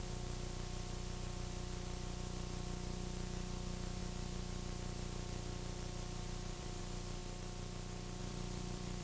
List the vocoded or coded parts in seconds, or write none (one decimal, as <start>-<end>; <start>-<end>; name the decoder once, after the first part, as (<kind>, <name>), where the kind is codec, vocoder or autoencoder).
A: 0.0-7.2 (vocoder, BigVGAN v2); 8.2-9.0